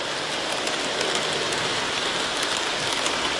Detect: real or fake real